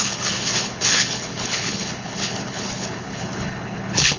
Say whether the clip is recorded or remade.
remade